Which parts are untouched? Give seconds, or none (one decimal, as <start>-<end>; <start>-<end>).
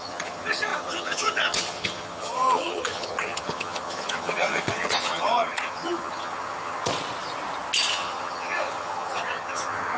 6.9-7.9